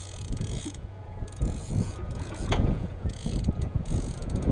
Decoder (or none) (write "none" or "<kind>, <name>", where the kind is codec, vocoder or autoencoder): vocoder, Vocos